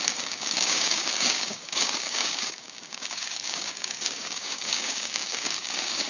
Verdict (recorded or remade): remade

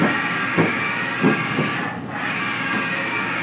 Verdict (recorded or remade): recorded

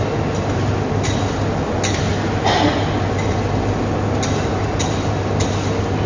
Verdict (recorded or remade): recorded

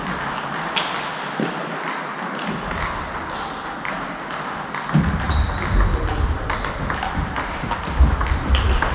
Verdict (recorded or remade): recorded